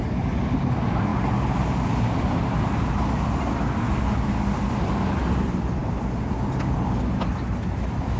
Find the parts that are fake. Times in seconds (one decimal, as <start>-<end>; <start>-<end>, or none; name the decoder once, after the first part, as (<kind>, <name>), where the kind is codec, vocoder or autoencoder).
none